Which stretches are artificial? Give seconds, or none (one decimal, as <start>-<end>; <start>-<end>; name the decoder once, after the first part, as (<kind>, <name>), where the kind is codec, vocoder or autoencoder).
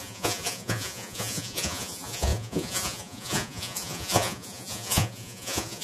0.0-5.8 (vocoder, Vocos)